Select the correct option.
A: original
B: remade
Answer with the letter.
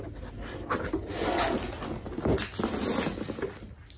A